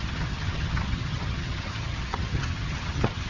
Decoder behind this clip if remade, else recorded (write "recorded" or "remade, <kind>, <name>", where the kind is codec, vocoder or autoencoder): remade, vocoder, HiFi-GAN